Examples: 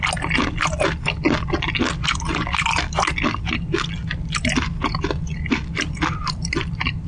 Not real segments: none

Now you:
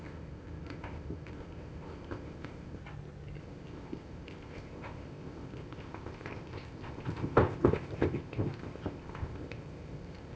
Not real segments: 0.0-2.8; 3.4-10.4

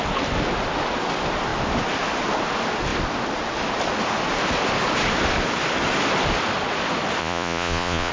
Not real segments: 7.2-8.1

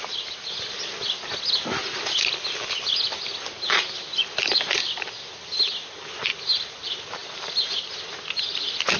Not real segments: none